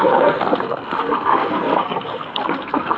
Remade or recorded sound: remade